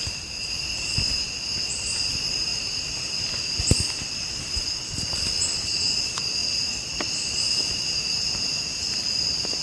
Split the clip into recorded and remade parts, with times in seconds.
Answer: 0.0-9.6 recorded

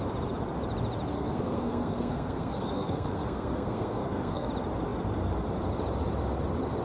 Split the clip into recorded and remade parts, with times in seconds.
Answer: 0.0-1.1 recorded; 1.1-4.5 remade; 4.5-6.8 recorded

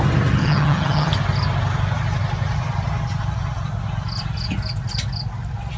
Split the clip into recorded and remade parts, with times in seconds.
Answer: 0.0-0.4 recorded; 0.4-1.1 remade; 1.1-5.8 recorded